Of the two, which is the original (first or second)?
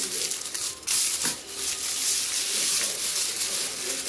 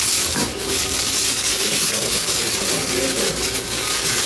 first